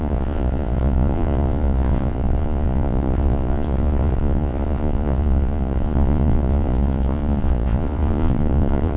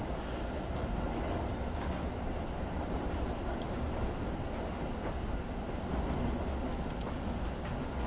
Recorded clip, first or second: second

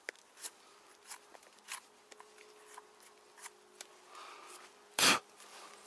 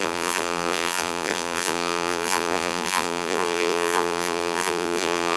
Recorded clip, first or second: first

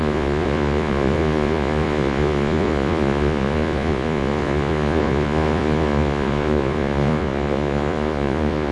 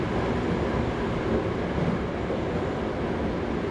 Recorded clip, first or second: second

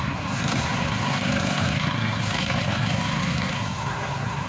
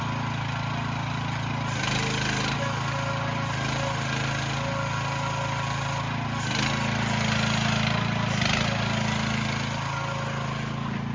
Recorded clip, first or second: second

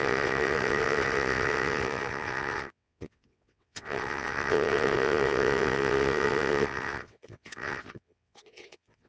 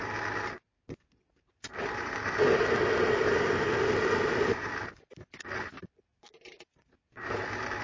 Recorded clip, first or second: second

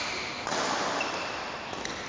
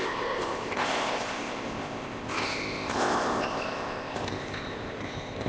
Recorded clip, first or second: first